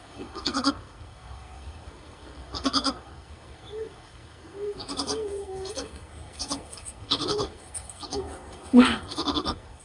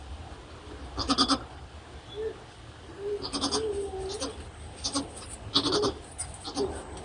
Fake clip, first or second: first